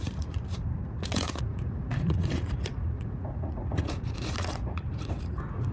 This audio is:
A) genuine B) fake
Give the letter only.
B